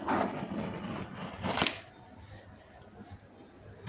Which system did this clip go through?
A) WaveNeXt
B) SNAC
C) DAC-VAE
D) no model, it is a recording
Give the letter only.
D